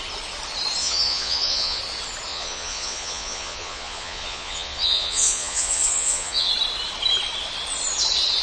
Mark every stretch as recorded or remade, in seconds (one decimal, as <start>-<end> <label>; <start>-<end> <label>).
0.0-0.8 recorded; 0.8-1.8 remade; 1.8-2.3 recorded; 2.3-6.5 remade; 6.5-8.4 recorded